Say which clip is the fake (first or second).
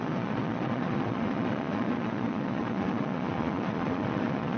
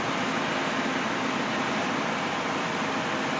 first